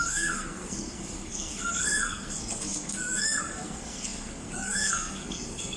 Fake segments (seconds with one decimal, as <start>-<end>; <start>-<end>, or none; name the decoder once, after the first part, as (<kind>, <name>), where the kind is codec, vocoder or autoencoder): 0.0-5.8 (codec, SNAC)